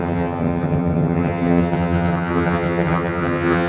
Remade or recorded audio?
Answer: remade